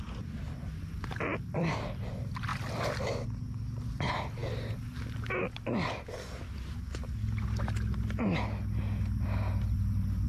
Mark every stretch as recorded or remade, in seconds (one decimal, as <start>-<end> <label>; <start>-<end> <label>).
0.0-10.3 recorded